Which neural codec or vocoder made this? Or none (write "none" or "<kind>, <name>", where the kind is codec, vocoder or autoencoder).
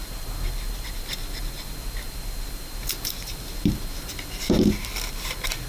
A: none